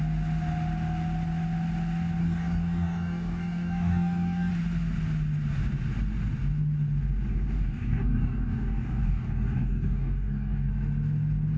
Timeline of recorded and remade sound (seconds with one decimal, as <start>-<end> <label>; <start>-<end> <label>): 0.0-2.2 recorded; 2.2-4.5 remade; 4.5-7.3 recorded; 7.3-10.7 remade; 10.7-11.6 recorded

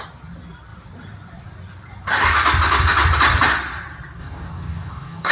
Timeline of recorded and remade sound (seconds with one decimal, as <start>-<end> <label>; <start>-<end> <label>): 0.0-4.2 recorded; 4.2-5.3 remade

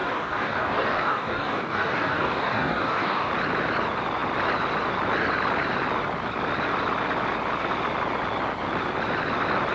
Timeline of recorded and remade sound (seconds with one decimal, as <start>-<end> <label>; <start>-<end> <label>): 0.0-3.3 remade; 3.3-9.7 recorded